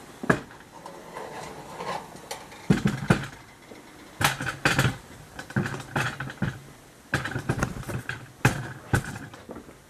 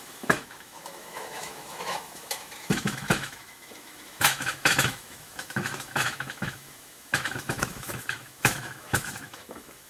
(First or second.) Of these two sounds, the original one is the first